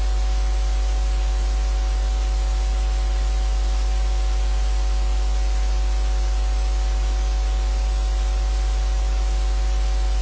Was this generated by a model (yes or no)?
no